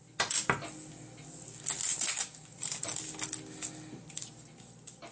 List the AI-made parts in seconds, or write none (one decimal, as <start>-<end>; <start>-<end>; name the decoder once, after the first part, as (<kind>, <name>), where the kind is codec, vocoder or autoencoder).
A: 1.8-3.0 (vocoder, BigVGAN v2)